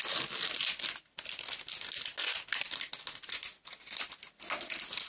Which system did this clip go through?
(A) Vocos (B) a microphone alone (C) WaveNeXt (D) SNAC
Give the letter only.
B